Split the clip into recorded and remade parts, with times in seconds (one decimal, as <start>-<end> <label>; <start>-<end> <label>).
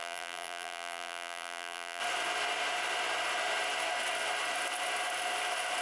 0.0-2.0 remade; 2.0-5.8 recorded